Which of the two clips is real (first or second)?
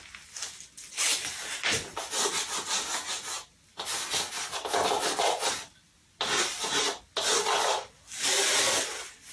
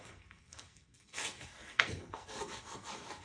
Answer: first